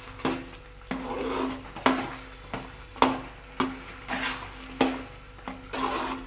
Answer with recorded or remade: recorded